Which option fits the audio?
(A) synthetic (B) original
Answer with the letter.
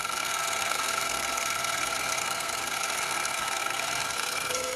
A